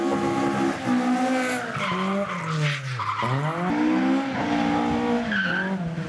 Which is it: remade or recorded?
recorded